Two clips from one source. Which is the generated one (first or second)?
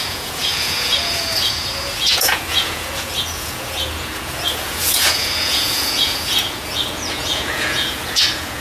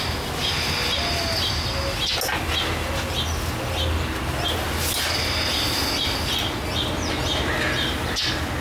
first